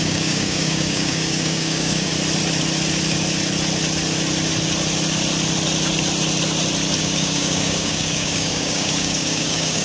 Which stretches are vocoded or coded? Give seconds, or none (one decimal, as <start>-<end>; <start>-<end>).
0.0-2.1; 7.0-9.8